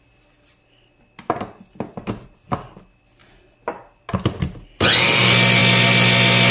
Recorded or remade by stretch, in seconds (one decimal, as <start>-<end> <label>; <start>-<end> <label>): 0.0-6.5 recorded